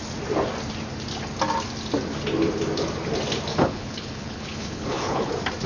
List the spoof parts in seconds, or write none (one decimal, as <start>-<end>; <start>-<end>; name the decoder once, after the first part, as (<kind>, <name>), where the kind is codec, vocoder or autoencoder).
3.5-5.3 (codec, HILCodec)